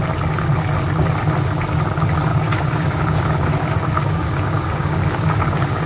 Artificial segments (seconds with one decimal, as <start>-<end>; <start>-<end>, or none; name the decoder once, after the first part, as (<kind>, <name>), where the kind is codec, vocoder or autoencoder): 2.3-5.9 (codec, DAC)